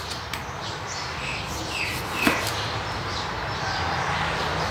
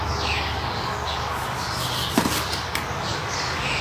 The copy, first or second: second